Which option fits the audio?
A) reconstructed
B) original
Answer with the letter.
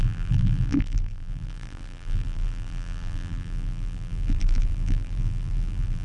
A